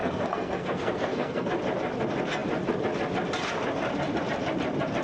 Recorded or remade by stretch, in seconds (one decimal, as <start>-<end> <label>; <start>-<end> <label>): 0.0-1.5 remade; 1.5-5.0 recorded